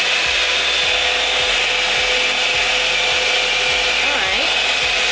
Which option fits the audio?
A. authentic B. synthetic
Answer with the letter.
A